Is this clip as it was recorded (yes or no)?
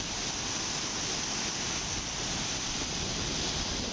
no